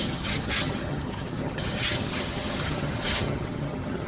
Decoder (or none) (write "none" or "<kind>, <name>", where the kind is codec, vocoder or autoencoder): vocoder, HiFi-GAN